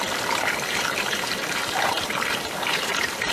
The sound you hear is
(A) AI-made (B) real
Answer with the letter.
A